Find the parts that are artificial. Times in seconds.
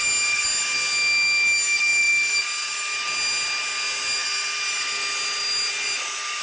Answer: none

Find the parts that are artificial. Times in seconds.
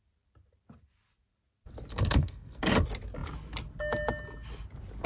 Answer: 1.9-2.6